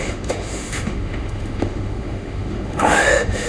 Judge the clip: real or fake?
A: fake